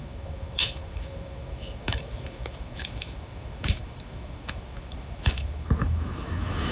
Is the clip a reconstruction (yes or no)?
yes